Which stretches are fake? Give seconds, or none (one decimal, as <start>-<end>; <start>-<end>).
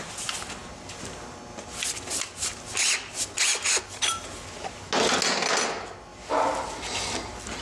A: none